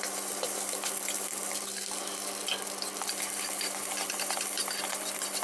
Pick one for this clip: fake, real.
fake